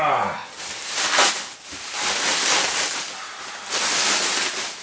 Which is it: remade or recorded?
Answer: recorded